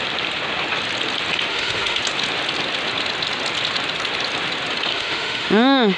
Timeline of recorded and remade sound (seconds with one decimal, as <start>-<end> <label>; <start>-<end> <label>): 0.0-1.5 recorded; 1.5-2.0 remade; 2.0-4.9 recorded; 4.9-6.0 remade